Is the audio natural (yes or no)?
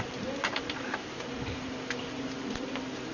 no